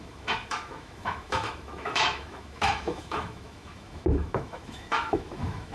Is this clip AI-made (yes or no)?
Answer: yes